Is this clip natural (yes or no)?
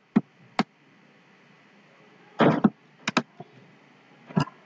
yes